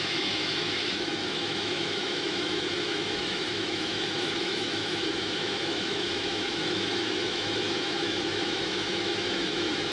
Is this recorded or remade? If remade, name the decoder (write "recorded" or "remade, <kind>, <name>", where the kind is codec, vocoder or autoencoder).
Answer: remade, autoencoder, DAC-VAE